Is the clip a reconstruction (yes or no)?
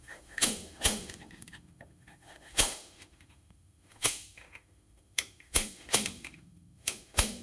yes